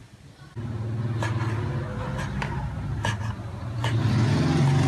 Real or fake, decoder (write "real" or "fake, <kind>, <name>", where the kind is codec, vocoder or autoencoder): real